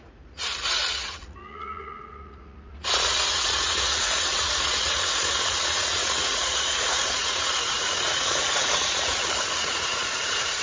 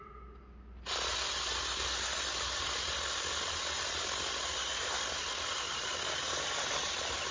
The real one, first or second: second